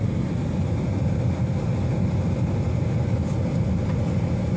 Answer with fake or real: real